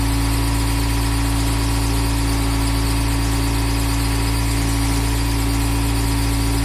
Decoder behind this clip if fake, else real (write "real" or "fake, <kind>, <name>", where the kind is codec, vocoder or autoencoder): real